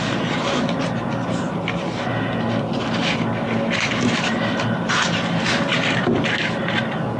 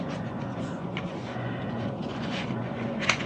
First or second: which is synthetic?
second